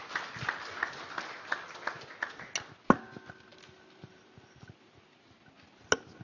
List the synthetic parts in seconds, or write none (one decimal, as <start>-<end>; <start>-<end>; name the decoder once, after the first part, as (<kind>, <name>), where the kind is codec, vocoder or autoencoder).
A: none